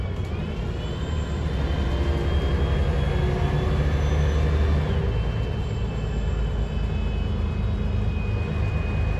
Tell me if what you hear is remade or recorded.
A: recorded